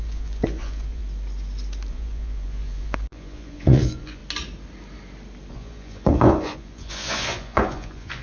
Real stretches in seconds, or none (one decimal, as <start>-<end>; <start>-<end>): 1.0-1.9; 4.2-5.5